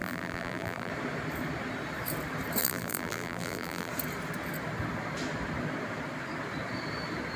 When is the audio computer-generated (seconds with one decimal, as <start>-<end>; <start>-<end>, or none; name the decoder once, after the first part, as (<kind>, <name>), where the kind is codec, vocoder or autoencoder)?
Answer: 0.0-0.9 (vocoder, BigVGAN v2); 2.6-3.9